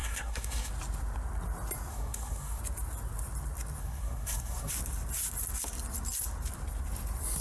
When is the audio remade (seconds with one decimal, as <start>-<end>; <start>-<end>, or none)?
0.0-0.7; 1.9-2.6; 3.8-4.7